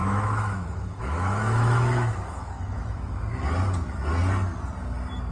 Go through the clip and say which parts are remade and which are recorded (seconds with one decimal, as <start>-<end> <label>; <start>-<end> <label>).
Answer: 0.0-3.2 remade; 3.2-5.3 recorded